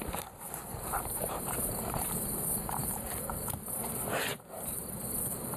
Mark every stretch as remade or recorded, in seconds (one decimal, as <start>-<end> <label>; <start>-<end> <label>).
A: 0.0-0.9 recorded; 0.9-3.8 remade; 3.8-5.6 recorded

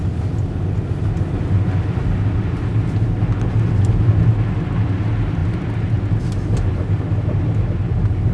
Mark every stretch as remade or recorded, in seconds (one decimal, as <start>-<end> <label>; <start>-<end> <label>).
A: 0.0-8.3 recorded

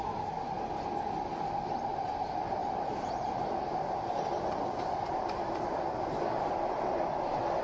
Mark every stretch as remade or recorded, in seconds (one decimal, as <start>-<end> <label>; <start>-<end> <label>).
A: 0.0-7.6 recorded

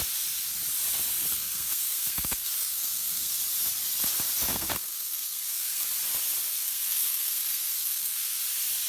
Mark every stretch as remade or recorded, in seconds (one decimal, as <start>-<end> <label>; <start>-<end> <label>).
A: 0.0-1.3 recorded; 1.3-3.4 remade; 3.4-4.5 recorded; 4.5-5.9 remade; 5.9-6.5 recorded; 6.5-8.4 remade; 8.4-8.9 recorded

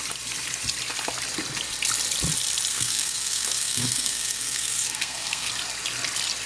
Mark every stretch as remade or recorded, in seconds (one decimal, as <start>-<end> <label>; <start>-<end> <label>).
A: 0.0-2.7 recorded; 2.7-5.5 remade; 5.5-6.5 recorded

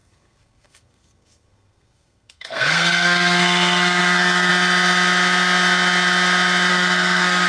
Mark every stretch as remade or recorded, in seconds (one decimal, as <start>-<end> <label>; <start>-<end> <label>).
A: 0.0-4.5 remade; 4.5-6.7 recorded; 6.7-7.5 remade

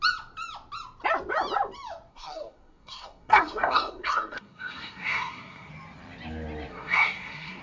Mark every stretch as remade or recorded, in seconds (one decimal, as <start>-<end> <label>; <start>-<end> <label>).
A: 0.0-2.1 recorded; 2.1-5.7 remade; 5.7-6.7 recorded; 6.7-7.6 remade

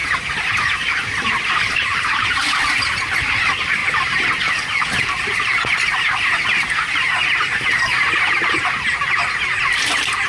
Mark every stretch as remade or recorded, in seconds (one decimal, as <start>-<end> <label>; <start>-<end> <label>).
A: 0.0-10.3 recorded